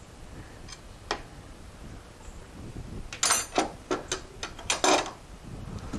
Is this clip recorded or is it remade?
recorded